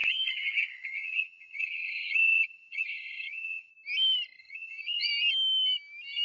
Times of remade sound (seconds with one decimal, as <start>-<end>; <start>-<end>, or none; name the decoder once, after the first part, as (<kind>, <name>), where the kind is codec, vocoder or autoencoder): 0.0-3.7 (vocoder, HiFi-GAN); 4.4-5.1